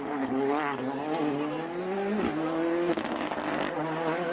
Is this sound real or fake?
real